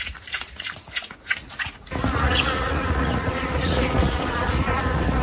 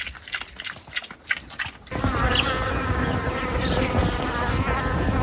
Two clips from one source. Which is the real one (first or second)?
second